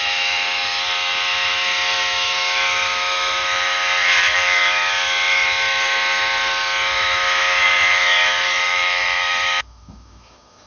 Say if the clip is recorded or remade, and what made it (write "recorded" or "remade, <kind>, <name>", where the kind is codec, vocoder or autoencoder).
remade, autoencoder, DAC-VAE